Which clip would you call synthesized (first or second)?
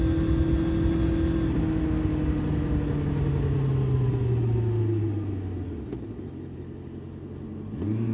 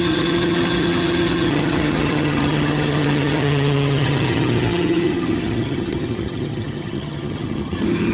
second